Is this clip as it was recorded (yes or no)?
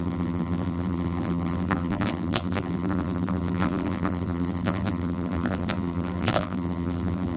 no